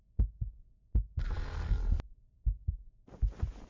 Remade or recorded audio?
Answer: recorded